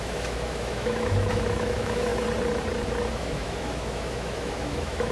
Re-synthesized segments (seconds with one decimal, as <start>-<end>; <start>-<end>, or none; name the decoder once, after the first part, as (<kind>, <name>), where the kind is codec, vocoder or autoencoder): 0.0-2.1 (autoencoder, DAC-VAE); 3.1-5.1